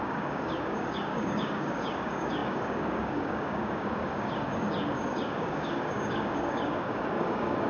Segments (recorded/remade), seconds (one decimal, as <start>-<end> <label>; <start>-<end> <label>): 0.0-7.7 remade